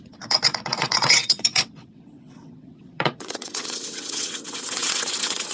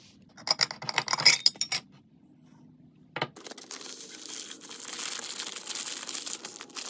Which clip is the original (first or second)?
second